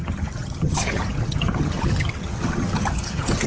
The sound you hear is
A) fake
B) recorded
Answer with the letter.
A